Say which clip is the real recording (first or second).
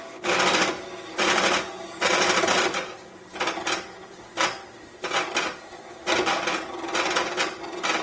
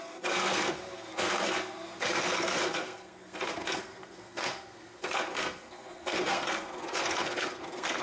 first